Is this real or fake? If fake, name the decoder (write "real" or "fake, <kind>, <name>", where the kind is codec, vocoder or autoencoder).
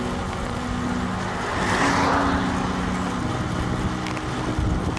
real